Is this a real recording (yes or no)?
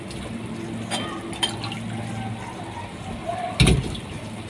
yes